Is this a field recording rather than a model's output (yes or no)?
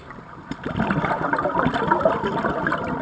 yes